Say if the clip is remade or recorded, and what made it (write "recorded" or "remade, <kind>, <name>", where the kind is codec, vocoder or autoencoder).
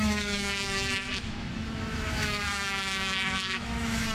remade, autoencoder, DAC-VAE